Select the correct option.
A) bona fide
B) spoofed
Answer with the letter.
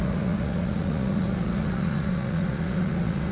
B